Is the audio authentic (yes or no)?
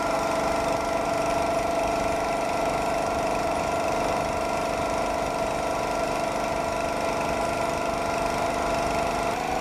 yes